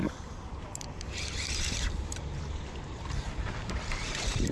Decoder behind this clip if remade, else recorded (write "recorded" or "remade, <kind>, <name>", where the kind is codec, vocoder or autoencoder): remade, vocoder, BigVGAN v2